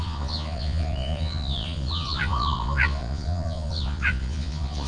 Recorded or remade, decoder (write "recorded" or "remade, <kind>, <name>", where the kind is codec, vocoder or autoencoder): remade, vocoder, Vocos